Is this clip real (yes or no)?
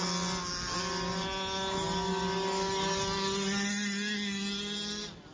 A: yes